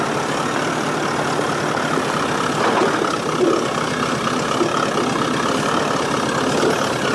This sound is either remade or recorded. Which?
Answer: recorded